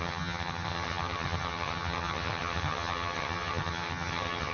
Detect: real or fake fake